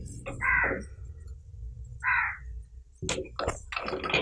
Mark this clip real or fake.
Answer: real